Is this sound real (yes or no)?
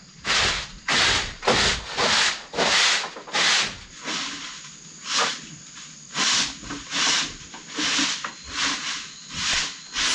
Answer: yes